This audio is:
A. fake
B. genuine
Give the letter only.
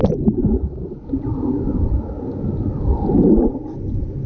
B